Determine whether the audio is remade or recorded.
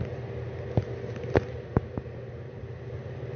recorded